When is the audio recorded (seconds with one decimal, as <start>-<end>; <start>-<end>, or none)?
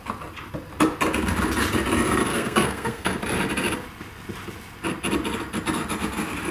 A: 0.0-2.3; 3.2-6.5